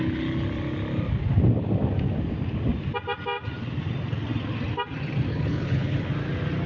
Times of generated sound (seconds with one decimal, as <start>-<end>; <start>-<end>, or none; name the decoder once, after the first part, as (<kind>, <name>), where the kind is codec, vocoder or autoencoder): 5.3-6.1 (codec, HILCodec)